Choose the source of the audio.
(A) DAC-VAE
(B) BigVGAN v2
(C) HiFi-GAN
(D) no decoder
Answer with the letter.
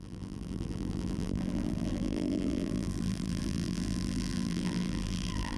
B